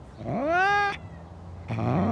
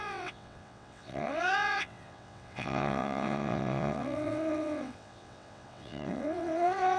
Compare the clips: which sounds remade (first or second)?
second